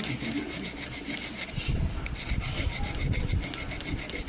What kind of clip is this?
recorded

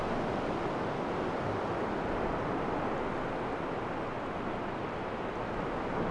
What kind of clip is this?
recorded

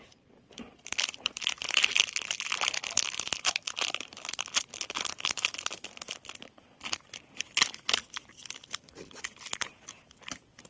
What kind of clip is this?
recorded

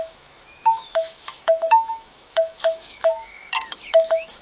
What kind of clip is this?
remade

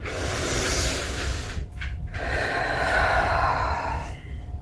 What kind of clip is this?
recorded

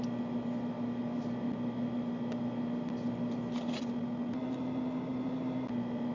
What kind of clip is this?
recorded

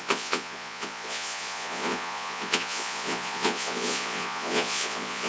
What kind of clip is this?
remade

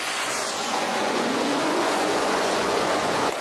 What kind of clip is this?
remade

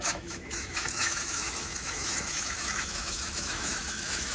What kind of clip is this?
remade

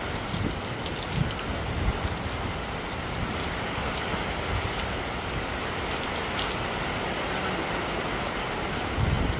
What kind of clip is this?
recorded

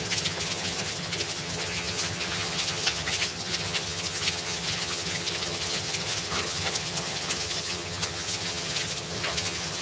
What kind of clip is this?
remade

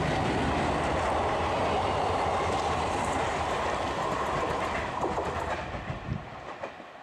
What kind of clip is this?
recorded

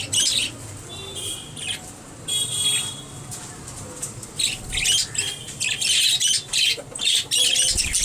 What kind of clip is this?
recorded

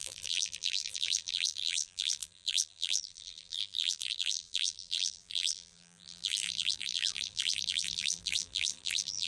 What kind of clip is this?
remade